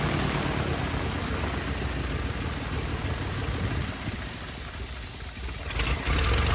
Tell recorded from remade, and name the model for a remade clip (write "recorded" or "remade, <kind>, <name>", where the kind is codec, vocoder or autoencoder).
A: recorded